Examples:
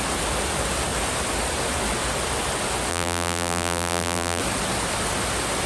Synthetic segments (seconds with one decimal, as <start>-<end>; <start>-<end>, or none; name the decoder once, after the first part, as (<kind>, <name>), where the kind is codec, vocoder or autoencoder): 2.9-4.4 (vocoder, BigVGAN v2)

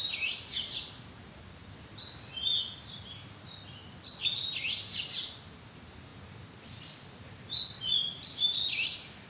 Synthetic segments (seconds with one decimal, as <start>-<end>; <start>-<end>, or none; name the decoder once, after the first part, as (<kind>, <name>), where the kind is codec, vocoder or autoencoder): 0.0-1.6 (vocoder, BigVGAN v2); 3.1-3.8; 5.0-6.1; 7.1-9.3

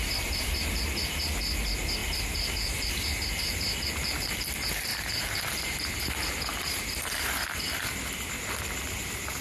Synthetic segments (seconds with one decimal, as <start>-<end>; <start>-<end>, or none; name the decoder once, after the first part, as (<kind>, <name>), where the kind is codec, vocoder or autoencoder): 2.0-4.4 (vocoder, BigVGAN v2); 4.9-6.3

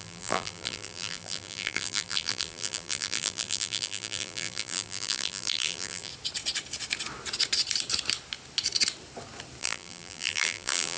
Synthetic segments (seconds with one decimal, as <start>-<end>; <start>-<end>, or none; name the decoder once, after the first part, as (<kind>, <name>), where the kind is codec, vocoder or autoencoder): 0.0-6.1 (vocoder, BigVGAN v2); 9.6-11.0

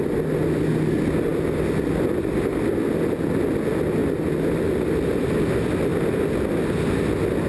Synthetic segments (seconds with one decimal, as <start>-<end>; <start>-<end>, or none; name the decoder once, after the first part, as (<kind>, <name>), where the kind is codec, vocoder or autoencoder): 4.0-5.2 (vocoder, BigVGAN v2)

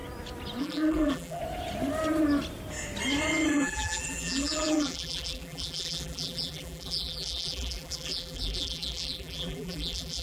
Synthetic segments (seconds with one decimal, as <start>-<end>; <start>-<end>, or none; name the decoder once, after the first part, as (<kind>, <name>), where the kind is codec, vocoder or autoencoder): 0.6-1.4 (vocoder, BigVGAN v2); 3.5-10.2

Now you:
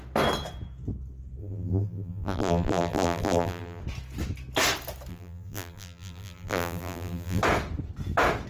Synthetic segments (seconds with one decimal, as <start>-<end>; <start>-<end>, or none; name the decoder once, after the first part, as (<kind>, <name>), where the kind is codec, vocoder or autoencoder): 1.4-3.8 (vocoder, BigVGAN v2); 5.1-7.4

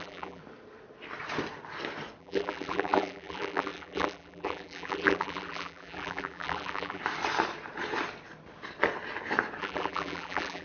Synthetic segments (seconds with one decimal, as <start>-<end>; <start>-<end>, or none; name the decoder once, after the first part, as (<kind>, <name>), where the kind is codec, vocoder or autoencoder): 0.0-0.4 (vocoder, BigVGAN v2); 2.2-7.0; 9.6-10.6